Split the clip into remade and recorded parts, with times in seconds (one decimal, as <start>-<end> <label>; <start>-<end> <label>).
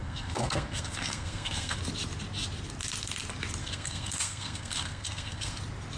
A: 0.0-1.8 remade; 1.8-3.6 recorded; 3.6-5.6 remade; 5.6-6.0 recorded